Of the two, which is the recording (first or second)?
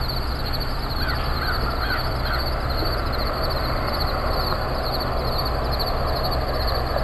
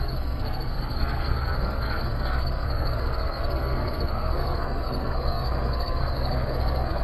first